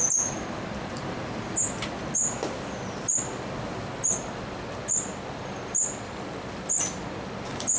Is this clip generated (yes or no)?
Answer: no